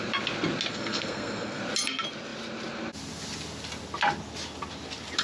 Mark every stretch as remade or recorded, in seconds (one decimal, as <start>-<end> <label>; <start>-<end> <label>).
0.0-0.7 recorded; 0.7-1.6 remade; 1.6-5.2 recorded